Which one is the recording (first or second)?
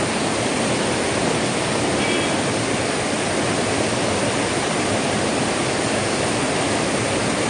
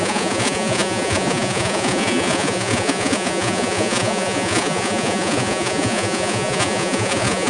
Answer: first